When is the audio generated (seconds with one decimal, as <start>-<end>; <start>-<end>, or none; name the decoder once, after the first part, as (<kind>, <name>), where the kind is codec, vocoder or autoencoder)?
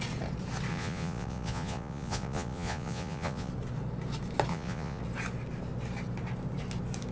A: 0.7-3.5 (vocoder, Vocos); 4.5-5.0